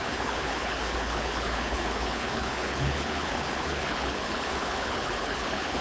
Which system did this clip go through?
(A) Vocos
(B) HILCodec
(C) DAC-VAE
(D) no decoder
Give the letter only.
B